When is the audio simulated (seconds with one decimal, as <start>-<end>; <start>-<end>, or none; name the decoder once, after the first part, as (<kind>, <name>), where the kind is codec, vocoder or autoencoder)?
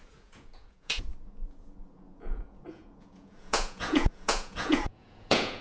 0.0-5.6 (vocoder, Vocos)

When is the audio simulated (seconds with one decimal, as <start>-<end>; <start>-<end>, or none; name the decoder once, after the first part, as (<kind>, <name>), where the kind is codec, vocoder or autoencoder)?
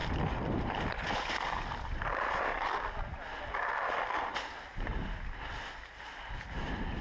none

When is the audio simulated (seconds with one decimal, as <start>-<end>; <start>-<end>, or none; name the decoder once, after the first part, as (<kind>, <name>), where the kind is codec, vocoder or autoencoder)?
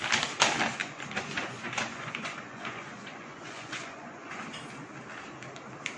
0.8-4.4 (vocoder, Vocos)